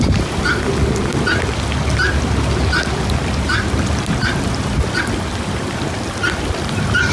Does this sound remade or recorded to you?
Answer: recorded